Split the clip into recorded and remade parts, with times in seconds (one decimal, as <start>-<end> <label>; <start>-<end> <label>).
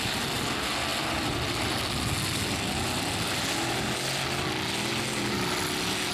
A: 0.0-6.1 recorded